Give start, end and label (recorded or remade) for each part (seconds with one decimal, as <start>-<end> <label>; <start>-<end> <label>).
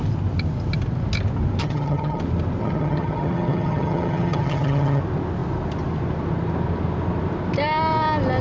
0.0-1.6 recorded; 1.6-2.2 remade; 2.2-2.6 recorded; 2.6-5.0 remade; 5.0-8.4 recorded